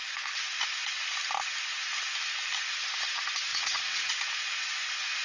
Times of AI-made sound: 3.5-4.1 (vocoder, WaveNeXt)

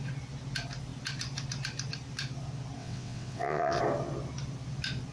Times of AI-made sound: 2.8-3.8 (vocoder, WaveNeXt)

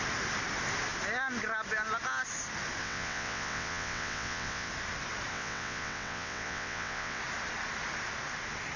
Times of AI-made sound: 2.8-4.7 (vocoder, WaveNeXt); 5.3-7.2

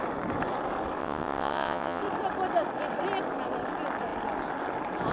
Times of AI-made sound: 1.0-2.0 (vocoder, WaveNeXt)

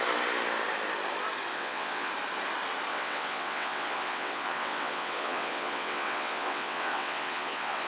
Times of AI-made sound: 1.5-2.1 (vocoder, WaveNeXt); 2.9-7.9

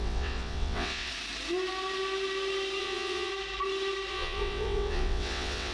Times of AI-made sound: 0.0-1.1 (vocoder, WaveNeXt); 2.8-3.3; 4.1-5.7

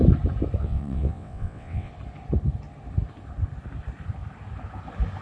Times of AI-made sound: 0.6-1.9 (vocoder, WaveNeXt)

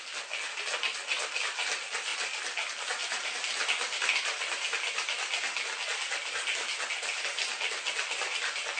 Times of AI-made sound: none